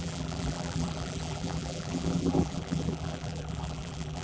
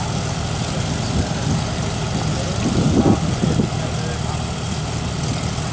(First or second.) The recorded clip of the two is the second